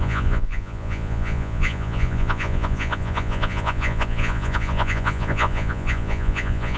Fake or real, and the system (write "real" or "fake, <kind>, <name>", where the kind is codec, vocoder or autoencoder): fake, vocoder, Vocos